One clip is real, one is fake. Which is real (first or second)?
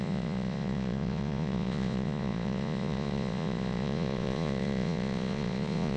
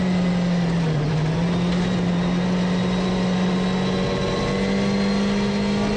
second